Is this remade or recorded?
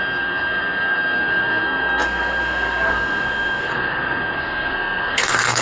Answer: remade